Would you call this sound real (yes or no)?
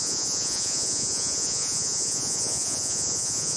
no